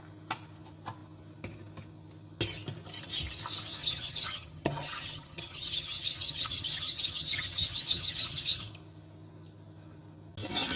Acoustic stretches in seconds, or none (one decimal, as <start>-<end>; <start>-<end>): 0.0-3.8; 8.6-10.8